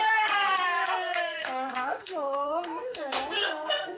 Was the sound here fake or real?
fake